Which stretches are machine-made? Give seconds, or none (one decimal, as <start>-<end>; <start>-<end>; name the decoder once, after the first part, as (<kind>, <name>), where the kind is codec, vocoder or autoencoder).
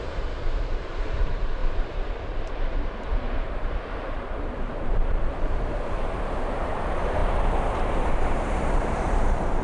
0.0-7.2 (vocoder, BigVGAN v2); 7.7-9.6